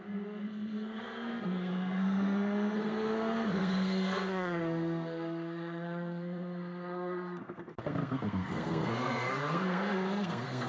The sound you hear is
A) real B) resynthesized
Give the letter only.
B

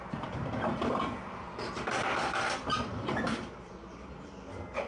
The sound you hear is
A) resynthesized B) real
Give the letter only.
A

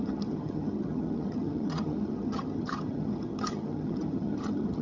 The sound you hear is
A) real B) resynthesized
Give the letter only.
B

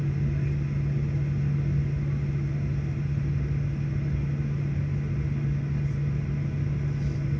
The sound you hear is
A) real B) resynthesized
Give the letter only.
A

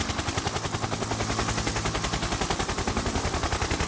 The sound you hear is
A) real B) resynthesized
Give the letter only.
A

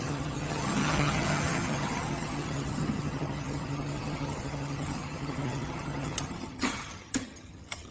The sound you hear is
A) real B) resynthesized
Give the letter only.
B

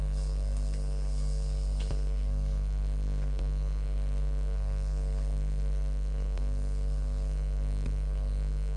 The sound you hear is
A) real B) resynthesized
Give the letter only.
B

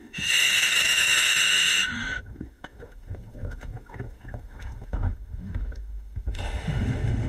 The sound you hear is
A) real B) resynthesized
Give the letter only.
B